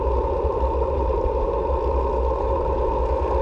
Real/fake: real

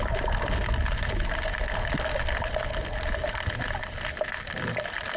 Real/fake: real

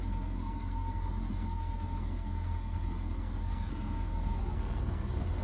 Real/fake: fake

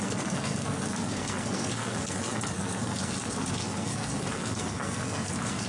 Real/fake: fake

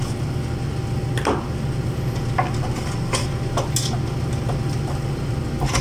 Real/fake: real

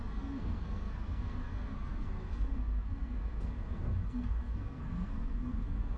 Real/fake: fake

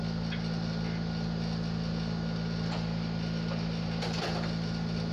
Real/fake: real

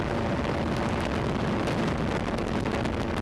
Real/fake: real